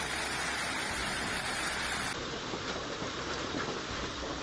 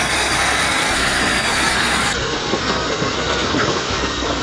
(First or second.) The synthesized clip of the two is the second